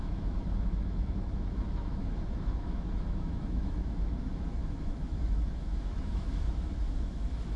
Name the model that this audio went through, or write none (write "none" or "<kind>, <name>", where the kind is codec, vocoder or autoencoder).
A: autoencoder, DAC-VAE